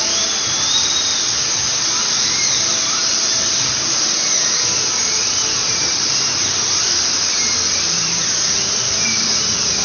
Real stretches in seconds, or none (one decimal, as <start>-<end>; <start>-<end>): 1.1-1.8; 7.3-7.8